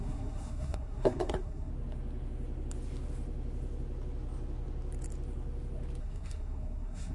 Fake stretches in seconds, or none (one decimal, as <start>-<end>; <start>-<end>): 0.0-1.7; 6.0-7.1